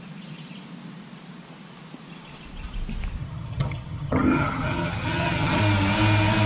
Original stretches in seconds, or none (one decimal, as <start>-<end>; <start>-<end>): 0.0-3.2; 5.6-6.5

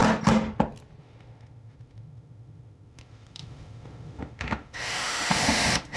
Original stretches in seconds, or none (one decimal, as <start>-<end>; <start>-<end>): 0.0-1.0

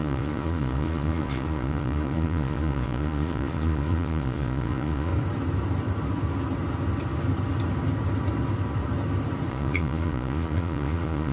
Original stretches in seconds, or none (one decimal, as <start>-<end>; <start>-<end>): 5.1-9.5

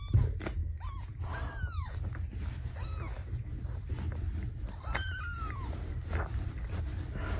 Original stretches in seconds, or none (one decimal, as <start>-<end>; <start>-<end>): 0.0-3.2; 3.9-7.4

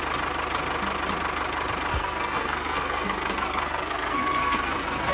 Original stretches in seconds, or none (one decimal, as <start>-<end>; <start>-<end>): 0.0-1.9